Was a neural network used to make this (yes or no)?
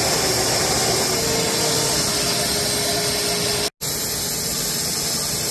no